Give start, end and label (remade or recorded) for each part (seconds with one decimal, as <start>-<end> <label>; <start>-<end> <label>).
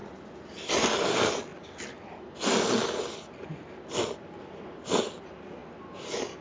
0.0-6.4 recorded